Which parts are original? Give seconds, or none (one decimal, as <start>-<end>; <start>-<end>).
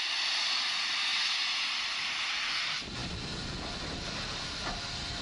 0.0-5.2